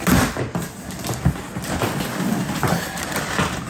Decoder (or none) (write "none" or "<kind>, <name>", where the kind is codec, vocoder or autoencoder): none